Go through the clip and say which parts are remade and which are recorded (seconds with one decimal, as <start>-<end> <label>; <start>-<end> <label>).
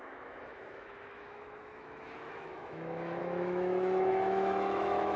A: 0.0-5.2 remade